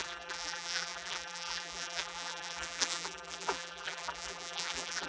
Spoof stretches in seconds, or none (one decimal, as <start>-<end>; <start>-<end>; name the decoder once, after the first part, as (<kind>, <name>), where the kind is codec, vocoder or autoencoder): 0.0-5.1 (vocoder, BigVGAN v2)